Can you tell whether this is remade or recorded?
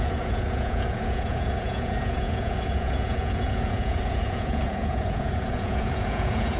remade